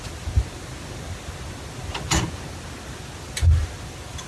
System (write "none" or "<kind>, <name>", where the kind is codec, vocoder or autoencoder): none